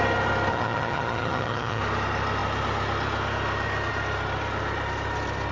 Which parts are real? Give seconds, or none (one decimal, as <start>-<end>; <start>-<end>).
0.0-0.5; 1.8-5.5

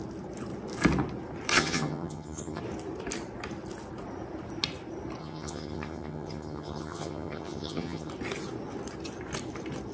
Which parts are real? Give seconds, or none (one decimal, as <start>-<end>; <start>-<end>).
0.0-1.5; 2.6-5.2; 8.1-9.9